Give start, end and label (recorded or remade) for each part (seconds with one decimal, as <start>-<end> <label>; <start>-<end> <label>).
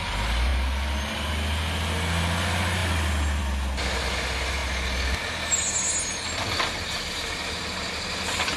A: 0.0-8.6 recorded